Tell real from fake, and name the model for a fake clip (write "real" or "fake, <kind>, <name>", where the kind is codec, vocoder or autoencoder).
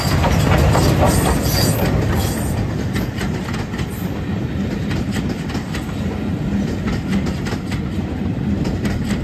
real